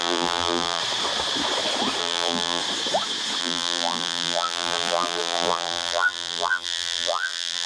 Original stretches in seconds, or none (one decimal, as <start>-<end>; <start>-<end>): 0.8-2.0; 2.6-3.4